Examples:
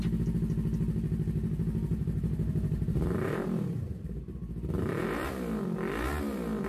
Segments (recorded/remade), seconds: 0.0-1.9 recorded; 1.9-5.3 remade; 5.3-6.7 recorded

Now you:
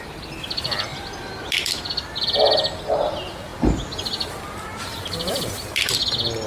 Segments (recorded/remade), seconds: 0.0-4.7 recorded; 4.7-5.4 remade; 5.4-6.5 recorded

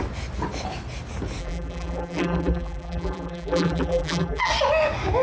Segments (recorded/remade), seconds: 0.0-1.4 recorded; 1.4-4.5 remade; 4.5-5.2 recorded

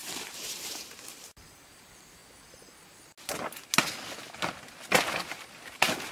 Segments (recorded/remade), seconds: 0.0-2.2 remade; 2.2-6.1 recorded

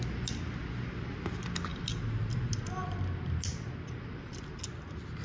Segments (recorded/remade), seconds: 0.0-5.2 recorded